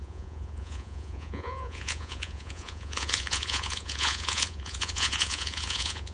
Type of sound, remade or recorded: remade